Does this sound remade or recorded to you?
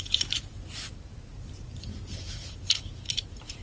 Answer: remade